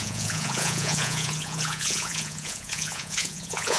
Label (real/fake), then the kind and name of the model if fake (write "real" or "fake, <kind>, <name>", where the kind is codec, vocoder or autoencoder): fake, vocoder, Vocos